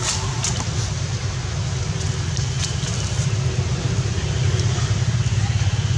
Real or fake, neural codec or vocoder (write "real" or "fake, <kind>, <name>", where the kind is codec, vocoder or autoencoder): real